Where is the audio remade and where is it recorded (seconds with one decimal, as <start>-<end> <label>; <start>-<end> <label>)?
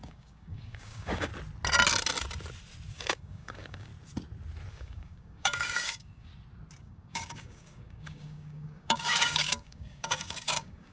0.0-1.3 remade; 1.3-2.9 recorded; 2.9-3.9 remade; 3.9-4.7 recorded; 4.7-6.3 remade; 6.3-6.8 recorded; 6.8-10.9 remade